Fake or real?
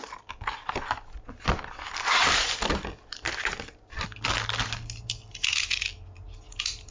real